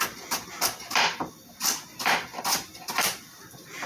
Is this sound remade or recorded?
remade